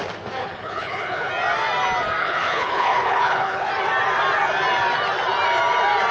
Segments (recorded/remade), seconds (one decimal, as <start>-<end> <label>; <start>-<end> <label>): 0.0-0.4 recorded; 0.4-1.3 remade; 1.3-2.2 recorded; 2.2-3.7 remade; 3.7-6.1 recorded